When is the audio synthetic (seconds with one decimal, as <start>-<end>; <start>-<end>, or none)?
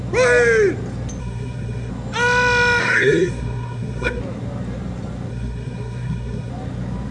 1.2-1.9; 2.8-4.2; 5.3-6.5